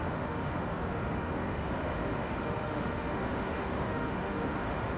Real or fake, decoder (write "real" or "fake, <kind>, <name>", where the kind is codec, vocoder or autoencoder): fake, autoencoder, DAC-VAE